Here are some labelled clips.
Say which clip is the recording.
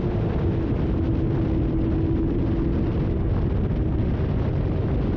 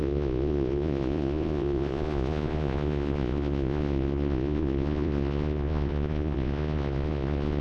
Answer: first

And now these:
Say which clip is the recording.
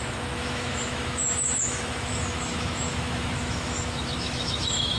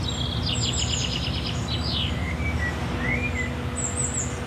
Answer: second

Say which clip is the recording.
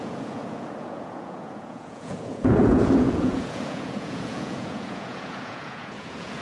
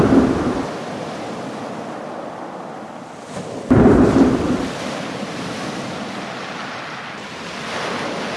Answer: second